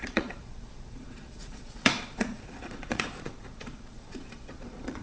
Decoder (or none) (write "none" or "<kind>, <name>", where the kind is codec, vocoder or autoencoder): vocoder, Vocos